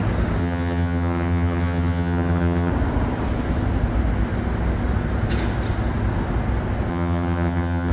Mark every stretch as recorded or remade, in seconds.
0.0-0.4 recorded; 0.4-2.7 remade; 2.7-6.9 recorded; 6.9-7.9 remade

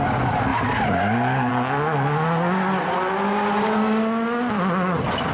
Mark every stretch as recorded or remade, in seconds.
0.0-5.3 recorded

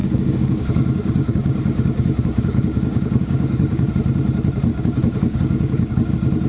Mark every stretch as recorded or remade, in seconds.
0.0-3.9 remade; 3.9-4.7 recorded; 4.7-6.1 remade; 6.1-6.5 recorded

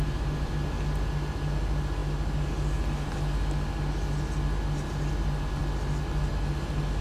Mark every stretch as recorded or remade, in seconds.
0.0-0.5 remade; 0.5-7.0 recorded

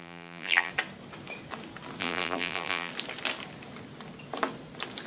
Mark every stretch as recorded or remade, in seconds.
0.0-0.7 remade; 0.7-2.0 recorded; 2.0-2.9 remade; 2.9-5.1 recorded